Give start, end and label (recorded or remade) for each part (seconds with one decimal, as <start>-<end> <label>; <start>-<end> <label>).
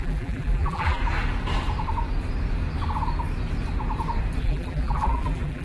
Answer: 0.0-1.0 remade; 1.0-4.4 recorded; 4.4-5.6 remade